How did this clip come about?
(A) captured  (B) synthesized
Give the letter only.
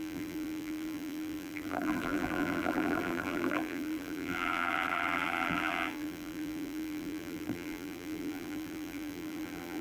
B